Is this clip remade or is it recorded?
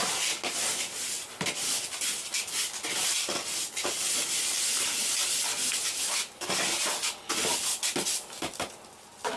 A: recorded